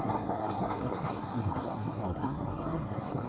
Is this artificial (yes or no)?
yes